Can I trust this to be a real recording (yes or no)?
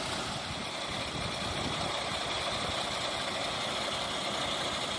yes